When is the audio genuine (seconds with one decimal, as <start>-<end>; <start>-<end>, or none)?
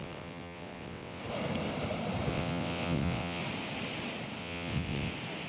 1.2-2.3; 3.4-4.4; 5.1-5.5